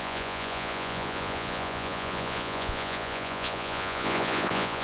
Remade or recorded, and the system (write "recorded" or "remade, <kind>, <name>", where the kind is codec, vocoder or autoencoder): remade, vocoder, Vocos